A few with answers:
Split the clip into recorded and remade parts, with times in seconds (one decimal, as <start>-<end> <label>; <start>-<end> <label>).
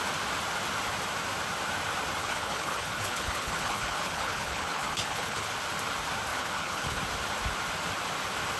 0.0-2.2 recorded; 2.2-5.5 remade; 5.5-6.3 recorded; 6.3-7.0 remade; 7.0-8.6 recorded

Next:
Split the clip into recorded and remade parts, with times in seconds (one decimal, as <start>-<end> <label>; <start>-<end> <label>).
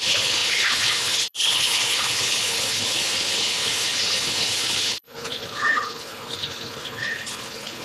0.0-7.8 remade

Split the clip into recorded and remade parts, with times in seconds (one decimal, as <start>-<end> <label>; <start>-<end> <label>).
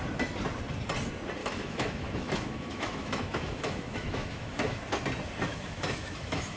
0.0-1.4 recorded; 1.4-4.8 remade; 4.8-5.5 recorded; 5.5-6.6 remade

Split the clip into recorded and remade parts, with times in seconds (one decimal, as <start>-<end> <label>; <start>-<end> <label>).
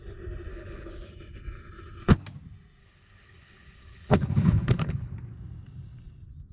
0.0-0.5 recorded; 0.5-1.1 remade; 1.1-2.8 recorded; 2.8-5.1 remade; 5.1-6.5 recorded